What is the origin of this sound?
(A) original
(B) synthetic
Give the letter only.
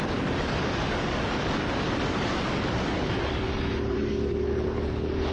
B